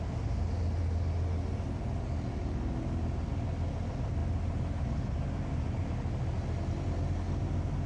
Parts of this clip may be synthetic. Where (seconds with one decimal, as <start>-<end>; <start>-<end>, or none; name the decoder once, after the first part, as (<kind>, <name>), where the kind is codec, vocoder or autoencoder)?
none